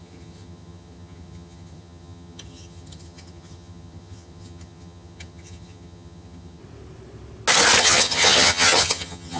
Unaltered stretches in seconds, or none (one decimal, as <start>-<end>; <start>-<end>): 6.6-7.8